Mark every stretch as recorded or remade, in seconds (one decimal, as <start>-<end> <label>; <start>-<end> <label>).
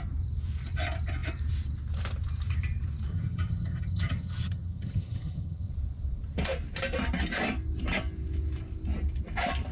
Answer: 0.0-3.1 recorded; 3.1-5.7 remade; 5.7-9.7 recorded